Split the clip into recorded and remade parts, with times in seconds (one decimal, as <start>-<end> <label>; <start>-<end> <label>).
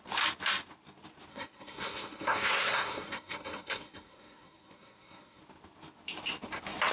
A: 0.0-1.3 recorded; 1.3-5.4 remade; 5.4-6.9 recorded